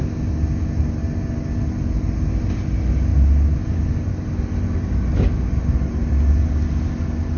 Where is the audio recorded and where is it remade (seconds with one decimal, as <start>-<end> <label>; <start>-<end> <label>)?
0.0-7.4 recorded